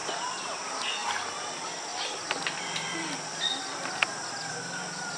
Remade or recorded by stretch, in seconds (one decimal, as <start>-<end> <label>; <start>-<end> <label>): 0.0-5.2 recorded